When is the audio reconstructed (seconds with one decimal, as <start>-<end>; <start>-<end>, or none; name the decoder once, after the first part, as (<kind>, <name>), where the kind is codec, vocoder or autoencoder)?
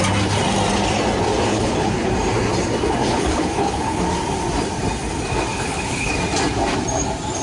1.5-2.1 (codec, HILCodec); 3.0-4.0; 5.5-6.1